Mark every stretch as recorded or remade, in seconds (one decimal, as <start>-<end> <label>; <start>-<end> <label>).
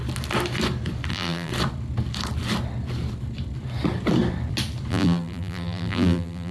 0.0-1.1 recorded; 1.1-1.5 remade; 1.5-4.9 recorded; 4.9-6.5 remade